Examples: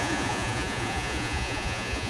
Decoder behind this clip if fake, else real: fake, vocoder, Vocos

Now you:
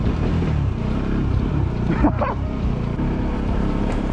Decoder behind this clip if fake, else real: fake, vocoder, BigVGAN v2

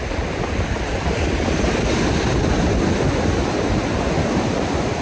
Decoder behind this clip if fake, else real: real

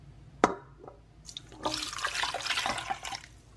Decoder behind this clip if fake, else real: real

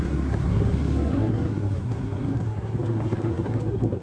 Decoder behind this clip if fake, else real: fake, codec, SNAC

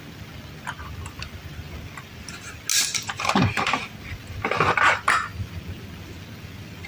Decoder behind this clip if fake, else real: real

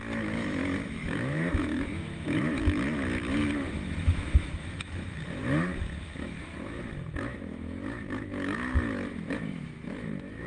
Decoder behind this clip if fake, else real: fake, autoencoder, DAC-VAE